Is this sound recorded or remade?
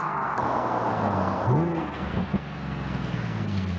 remade